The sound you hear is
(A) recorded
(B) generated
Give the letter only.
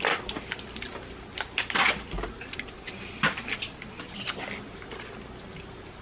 A